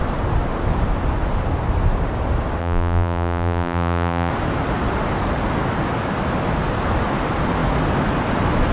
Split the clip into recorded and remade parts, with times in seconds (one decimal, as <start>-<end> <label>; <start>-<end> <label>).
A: 0.0-2.6 recorded; 2.6-4.3 remade; 4.3-8.7 recorded

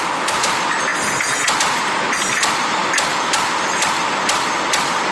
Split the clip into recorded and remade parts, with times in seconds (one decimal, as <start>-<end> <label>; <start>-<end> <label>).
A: 0.0-5.1 recorded

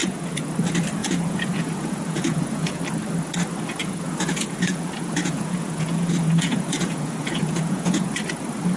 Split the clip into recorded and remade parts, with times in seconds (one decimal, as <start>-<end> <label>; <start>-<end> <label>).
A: 0.0-0.5 remade; 0.5-1.0 recorded; 1.0-2.8 remade; 2.8-3.8 recorded; 3.8-8.1 remade; 8.1-8.8 recorded

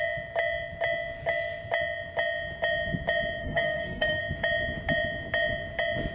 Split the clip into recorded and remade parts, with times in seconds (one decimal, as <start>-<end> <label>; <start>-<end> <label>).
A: 0.0-3.4 recorded; 3.4-4.2 remade; 4.2-6.1 recorded

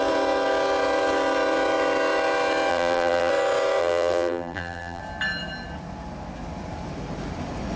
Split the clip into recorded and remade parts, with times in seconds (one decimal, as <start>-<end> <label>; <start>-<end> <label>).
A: 0.0-2.7 recorded; 2.7-3.3 remade; 3.3-3.8 recorded; 3.8-5.0 remade; 5.0-7.8 recorded

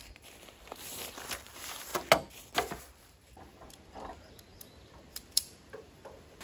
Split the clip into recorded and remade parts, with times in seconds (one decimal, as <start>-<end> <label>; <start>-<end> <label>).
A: 0.0-1.9 remade; 1.9-2.8 recorded; 2.8-6.4 remade

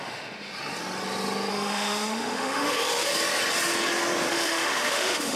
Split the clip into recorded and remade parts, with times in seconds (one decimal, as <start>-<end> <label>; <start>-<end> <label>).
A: 0.0-0.5 remade; 0.5-1.5 recorded; 1.5-3.1 remade; 3.1-4.3 recorded; 4.3-5.4 remade

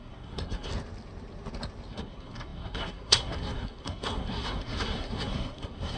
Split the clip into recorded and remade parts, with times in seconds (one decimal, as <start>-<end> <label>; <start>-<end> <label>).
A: 0.0-0.7 remade; 0.7-1.9 recorded; 1.9-6.0 remade